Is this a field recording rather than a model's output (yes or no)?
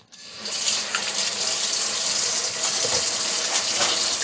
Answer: yes